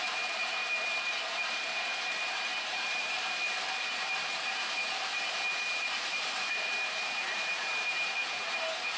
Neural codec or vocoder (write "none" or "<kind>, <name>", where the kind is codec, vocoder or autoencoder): vocoder, BigVGAN v2